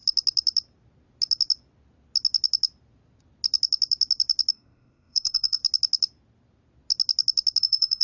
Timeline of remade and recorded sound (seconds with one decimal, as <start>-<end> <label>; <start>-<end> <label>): 0.0-4.5 recorded; 4.5-5.6 remade; 5.6-7.6 recorded; 7.6-8.0 remade